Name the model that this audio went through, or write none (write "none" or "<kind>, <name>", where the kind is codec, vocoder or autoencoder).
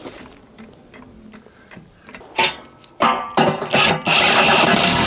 vocoder, BigVGAN v2